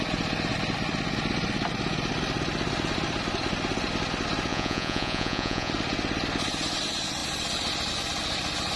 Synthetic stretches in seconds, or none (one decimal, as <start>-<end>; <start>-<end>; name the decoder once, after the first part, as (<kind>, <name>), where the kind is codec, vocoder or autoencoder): 4.5-5.7 (vocoder, Vocos)